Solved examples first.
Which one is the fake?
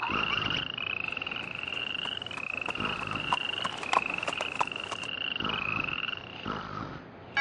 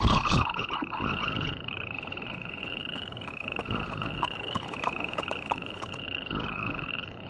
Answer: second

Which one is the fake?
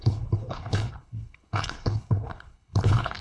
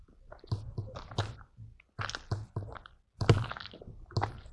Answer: first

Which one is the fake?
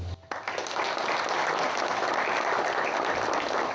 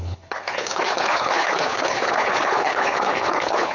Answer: second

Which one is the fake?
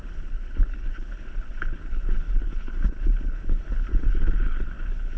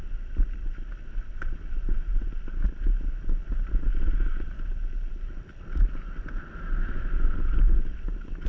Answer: first